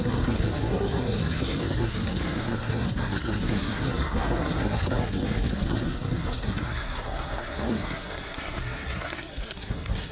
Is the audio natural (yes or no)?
no